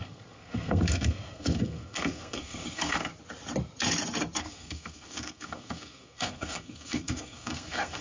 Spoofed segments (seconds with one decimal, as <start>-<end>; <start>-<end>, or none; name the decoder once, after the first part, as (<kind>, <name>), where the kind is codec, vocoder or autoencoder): 0.0-3.1 (codec, SNAC); 4.4-8.0